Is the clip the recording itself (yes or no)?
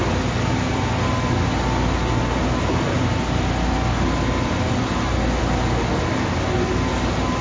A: yes